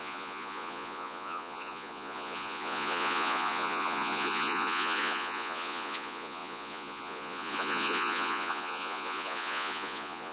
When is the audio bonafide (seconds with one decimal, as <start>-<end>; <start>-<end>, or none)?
none